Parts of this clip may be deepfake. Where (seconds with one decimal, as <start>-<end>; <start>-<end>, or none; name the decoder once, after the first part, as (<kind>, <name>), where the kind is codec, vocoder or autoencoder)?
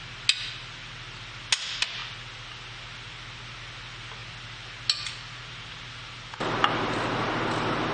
none